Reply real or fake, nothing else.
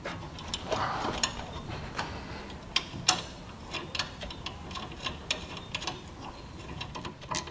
real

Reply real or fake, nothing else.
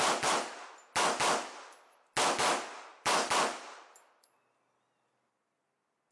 real